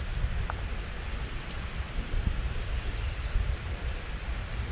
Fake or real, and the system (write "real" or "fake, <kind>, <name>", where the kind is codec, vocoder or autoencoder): real